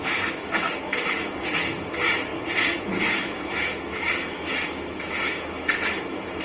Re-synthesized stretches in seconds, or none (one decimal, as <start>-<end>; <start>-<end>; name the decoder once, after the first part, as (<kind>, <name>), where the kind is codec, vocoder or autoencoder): 0.0-6.4 (autoencoder, DAC-VAE)